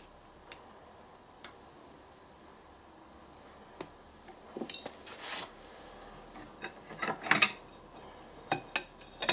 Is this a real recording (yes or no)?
yes